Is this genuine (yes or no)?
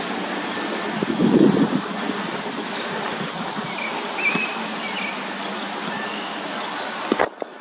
yes